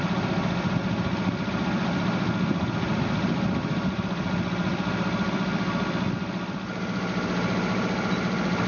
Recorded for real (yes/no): yes